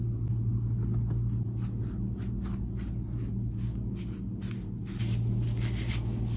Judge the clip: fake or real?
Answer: real